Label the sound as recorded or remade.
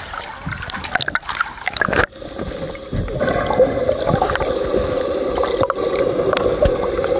recorded